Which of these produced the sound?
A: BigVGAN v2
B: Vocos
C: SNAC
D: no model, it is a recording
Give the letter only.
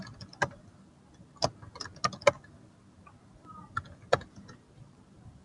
D